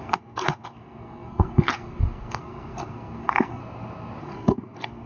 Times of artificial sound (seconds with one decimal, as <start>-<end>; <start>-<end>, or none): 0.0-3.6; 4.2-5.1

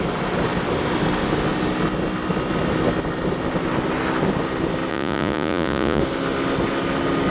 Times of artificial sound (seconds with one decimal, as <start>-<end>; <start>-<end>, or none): 4.9-6.0

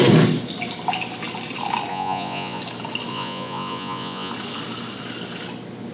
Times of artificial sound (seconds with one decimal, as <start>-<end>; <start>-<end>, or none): 1.9-2.6; 3.1-4.3